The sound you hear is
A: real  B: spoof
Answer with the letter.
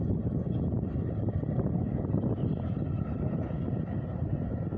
A